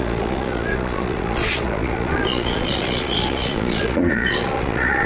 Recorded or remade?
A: remade